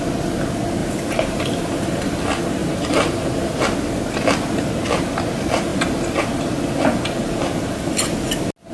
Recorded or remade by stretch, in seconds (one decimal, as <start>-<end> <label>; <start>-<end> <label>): 0.0-0.8 recorded; 0.8-2.2 remade; 2.2-2.6 recorded; 2.6-3.6 remade; 3.6-8.7 recorded